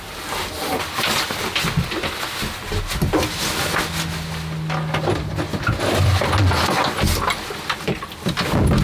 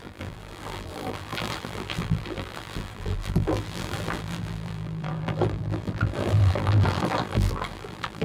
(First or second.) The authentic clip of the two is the first